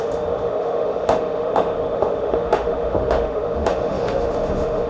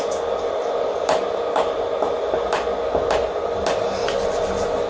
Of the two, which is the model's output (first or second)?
first